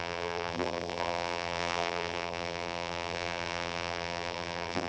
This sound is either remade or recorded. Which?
remade